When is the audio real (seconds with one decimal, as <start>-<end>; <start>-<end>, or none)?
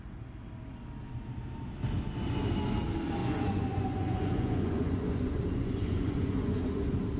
0.0-3.2; 6.8-7.2